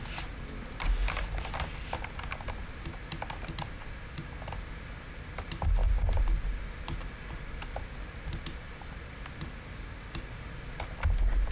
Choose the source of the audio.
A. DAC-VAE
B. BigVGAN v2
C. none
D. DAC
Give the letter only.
C